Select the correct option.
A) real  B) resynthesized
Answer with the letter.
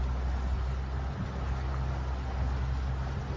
A